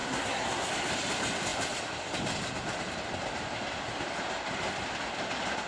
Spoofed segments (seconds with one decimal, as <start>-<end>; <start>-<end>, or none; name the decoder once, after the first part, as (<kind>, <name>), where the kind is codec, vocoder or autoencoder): 0.0-0.7 (codec, SNAC)